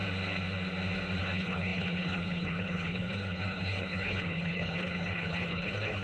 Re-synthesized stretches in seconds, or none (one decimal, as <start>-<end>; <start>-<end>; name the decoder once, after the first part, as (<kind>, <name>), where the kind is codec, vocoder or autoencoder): 1.2-6.0 (codec, HILCodec)